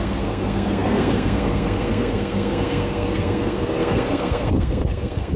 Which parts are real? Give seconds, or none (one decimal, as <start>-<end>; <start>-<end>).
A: none